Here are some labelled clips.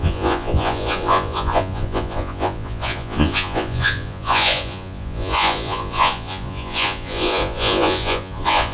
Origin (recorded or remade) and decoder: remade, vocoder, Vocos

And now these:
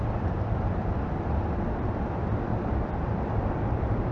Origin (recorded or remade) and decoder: recorded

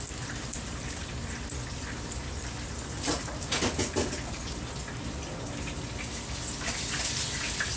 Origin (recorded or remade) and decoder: recorded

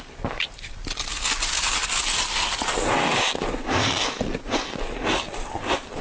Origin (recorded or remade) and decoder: recorded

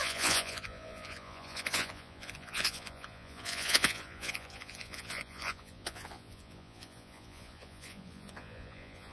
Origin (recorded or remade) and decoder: remade, vocoder, Vocos